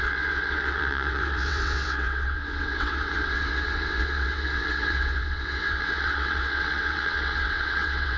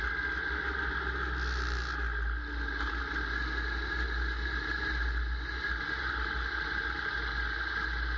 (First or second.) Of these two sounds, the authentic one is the second